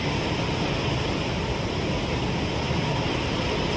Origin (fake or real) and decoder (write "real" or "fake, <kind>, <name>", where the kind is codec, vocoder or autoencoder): real